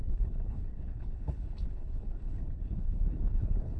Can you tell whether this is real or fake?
fake